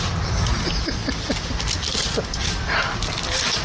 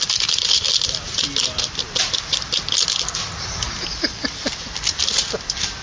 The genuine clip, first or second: first